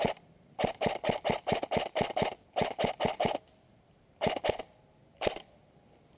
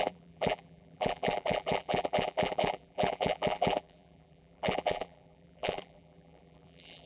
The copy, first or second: second